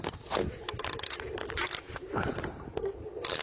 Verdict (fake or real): real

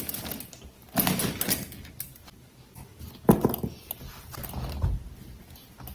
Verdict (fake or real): real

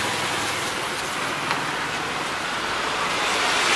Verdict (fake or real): real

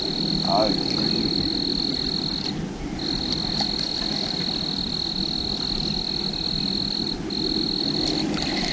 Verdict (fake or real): real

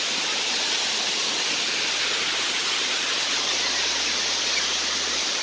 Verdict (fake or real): real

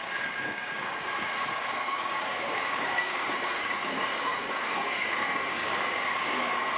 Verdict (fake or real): fake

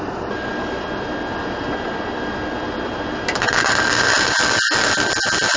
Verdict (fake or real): real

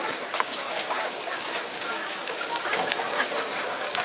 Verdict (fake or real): fake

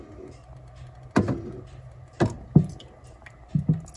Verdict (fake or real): real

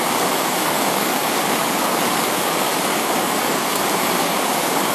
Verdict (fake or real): fake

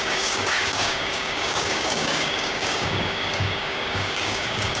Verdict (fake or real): fake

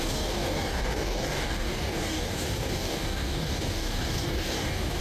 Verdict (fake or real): fake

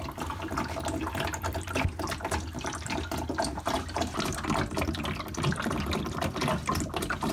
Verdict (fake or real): real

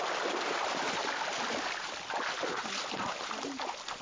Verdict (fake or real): real